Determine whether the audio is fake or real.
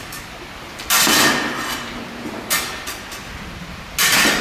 real